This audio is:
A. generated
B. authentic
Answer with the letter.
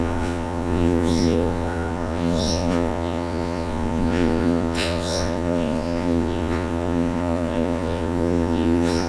A